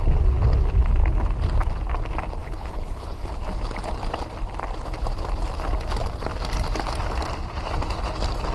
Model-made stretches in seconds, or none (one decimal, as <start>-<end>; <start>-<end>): 2.4-3.3